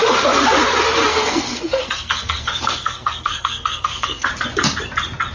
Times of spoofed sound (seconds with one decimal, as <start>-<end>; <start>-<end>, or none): 1.1-4.3